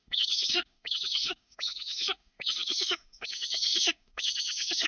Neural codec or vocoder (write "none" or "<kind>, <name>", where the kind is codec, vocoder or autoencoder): autoencoder, DAC-VAE